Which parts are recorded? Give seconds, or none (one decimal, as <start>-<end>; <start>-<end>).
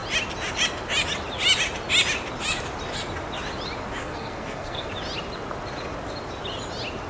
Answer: 0.0-4.0; 4.9-7.1